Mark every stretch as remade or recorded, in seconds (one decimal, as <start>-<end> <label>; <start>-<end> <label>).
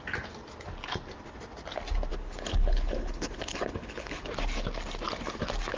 0.0-2.1 recorded; 2.1-4.2 remade; 4.2-5.8 recorded